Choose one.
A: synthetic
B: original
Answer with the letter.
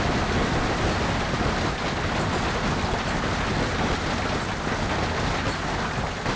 B